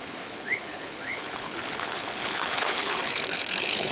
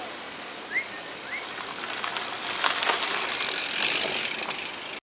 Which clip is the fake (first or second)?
first